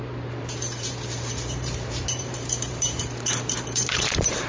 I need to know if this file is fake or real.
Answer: fake